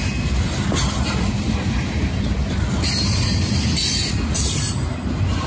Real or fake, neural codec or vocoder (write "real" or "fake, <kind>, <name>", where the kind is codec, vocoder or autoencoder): real